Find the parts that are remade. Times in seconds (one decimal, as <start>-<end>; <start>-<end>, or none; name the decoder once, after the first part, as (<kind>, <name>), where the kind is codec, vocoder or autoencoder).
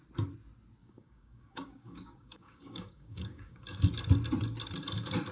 0.8-3.9 (codec, DAC)